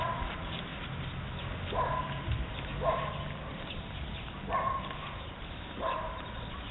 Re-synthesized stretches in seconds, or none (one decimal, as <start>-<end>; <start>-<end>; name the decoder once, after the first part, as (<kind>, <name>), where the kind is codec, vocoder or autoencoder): 0.0-0.7 (vocoder, BigVGAN v2); 4.7-6.7